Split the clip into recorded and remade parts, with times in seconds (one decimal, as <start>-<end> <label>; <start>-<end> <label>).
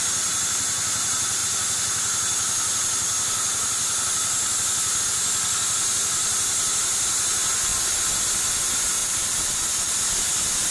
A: 0.0-9.0 recorded; 9.0-10.0 remade; 10.0-10.7 recorded